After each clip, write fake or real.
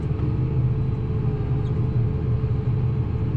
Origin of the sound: real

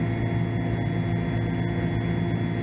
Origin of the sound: real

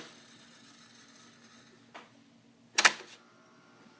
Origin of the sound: real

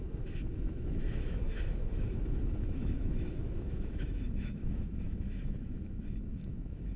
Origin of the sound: fake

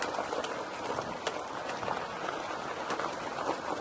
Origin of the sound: real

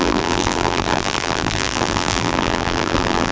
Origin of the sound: fake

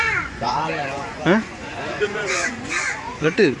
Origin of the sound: fake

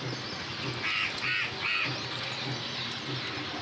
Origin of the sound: real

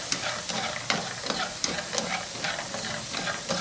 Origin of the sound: real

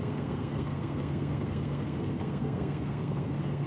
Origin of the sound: fake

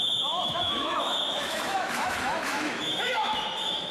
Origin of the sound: fake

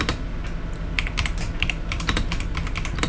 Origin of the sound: real